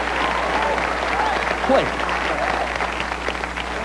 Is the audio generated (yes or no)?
no